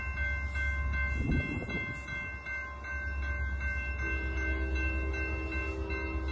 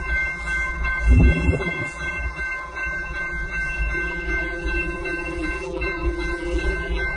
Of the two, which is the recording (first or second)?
first